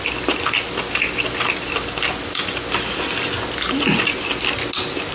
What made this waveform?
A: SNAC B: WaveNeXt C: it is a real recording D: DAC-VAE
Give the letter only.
C